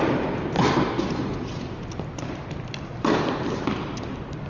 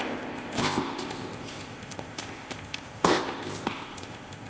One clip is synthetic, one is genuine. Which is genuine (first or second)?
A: first